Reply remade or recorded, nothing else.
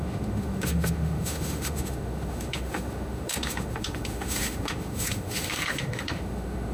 remade